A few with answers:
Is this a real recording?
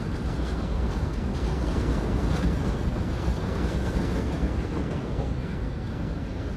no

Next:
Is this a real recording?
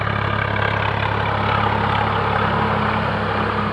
yes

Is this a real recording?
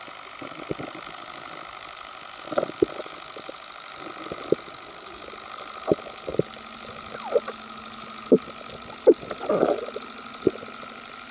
yes